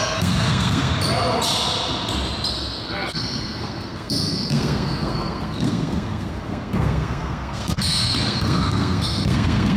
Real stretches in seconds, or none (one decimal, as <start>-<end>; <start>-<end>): 0.9-2.5